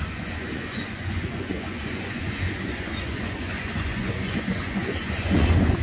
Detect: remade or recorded remade